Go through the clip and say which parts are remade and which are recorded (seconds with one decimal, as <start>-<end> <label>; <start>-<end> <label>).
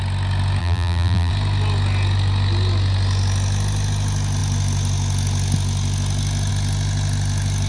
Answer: 0.0-0.6 recorded; 0.6-1.3 remade; 1.3-7.7 recorded